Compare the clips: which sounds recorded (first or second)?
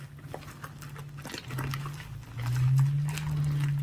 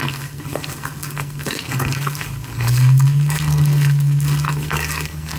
first